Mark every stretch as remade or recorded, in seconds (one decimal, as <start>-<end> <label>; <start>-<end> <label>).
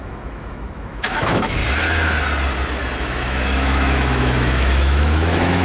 0.0-1.6 remade; 1.6-3.0 recorded; 3.0-5.6 remade